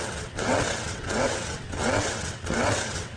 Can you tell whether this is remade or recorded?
remade